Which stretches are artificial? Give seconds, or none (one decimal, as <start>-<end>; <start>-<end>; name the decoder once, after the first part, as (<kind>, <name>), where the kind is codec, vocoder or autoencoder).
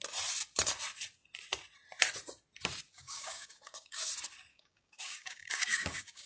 2.9-4.1 (codec, DAC); 4.5-6.3